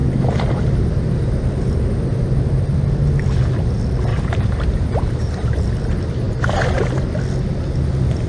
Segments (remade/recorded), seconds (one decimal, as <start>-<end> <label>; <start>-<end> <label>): 0.0-0.6 remade; 0.6-4.1 recorded; 4.1-5.6 remade; 5.6-8.3 recorded